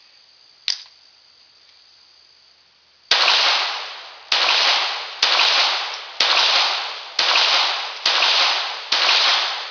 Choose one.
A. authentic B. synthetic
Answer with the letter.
A